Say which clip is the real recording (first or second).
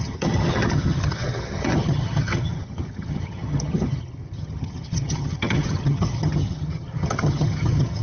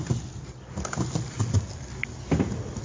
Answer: second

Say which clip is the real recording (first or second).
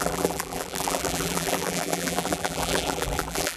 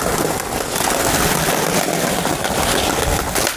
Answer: second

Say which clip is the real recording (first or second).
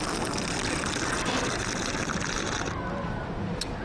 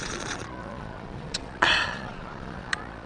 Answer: first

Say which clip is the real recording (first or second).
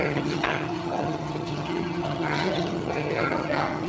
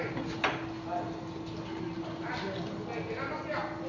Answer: second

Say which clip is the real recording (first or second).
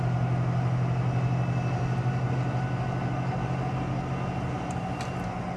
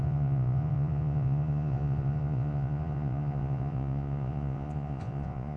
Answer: first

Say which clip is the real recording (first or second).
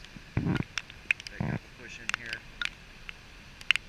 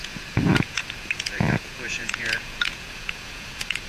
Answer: first